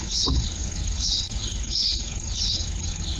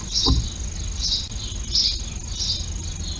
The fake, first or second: first